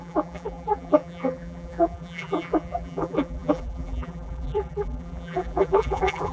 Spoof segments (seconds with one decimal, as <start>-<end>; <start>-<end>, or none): 0.0-6.3